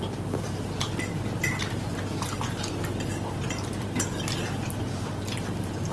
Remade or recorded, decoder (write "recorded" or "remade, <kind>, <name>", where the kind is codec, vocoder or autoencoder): recorded